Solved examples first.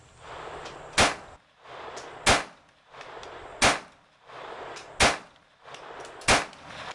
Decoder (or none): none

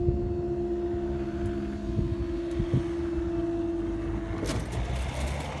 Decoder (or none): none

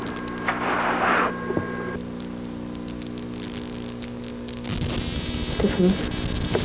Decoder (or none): none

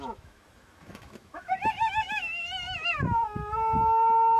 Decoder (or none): autoencoder, DAC-VAE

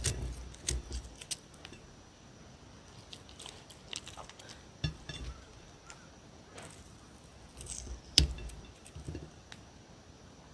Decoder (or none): none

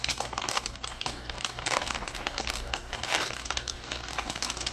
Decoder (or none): codec, DAC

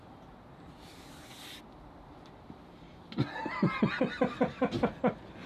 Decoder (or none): none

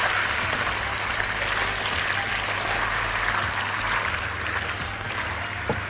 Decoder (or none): none